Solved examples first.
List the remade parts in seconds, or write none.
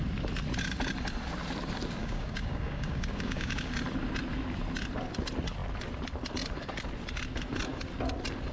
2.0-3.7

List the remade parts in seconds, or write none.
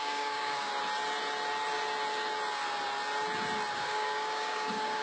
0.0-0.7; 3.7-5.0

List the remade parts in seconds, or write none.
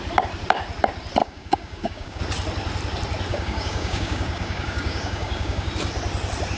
1.2-2.2; 3.3-5.7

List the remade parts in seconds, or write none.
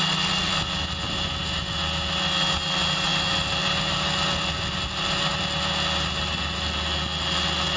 none